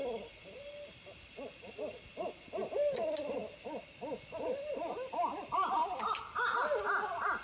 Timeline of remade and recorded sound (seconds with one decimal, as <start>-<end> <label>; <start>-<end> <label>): 0.0-7.4 recorded

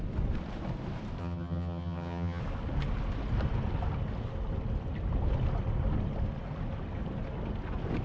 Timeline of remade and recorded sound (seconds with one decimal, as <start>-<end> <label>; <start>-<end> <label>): 0.0-1.2 recorded; 1.2-2.4 remade; 2.4-8.0 recorded

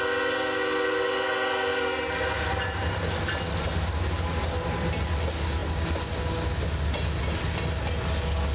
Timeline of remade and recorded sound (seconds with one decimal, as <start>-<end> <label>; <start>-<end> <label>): 0.0-8.5 recorded

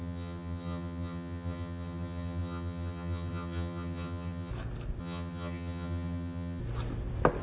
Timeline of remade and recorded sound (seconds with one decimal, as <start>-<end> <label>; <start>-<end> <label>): 0.0-4.5 remade; 4.5-5.0 recorded; 5.0-6.6 remade; 6.6-7.4 recorded

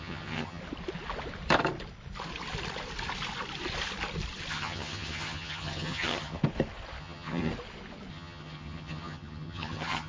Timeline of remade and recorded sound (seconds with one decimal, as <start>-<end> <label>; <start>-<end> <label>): 0.0-0.6 remade; 0.6-4.5 recorded; 4.5-6.4 remade; 6.4-7.0 recorded; 7.0-7.5 remade; 7.5-8.1 recorded; 8.1-10.1 remade

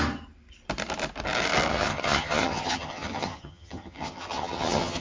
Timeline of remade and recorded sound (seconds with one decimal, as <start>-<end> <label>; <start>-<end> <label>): 0.0-1.7 recorded; 1.7-5.0 remade

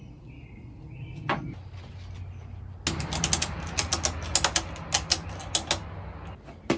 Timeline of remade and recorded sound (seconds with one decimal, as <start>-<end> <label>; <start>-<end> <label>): 0.0-6.8 recorded